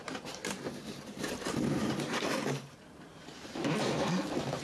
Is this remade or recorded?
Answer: remade